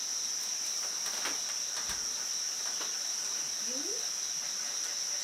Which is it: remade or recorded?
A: recorded